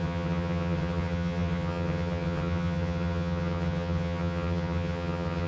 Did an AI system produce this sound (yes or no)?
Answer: yes